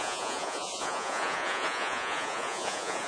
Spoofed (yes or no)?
yes